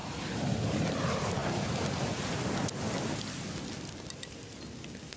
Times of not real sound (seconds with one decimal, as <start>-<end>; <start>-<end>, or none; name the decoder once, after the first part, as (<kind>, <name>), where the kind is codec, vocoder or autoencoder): none